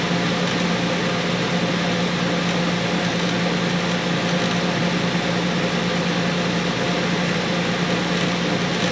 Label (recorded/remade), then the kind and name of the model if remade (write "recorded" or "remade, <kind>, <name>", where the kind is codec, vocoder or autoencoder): recorded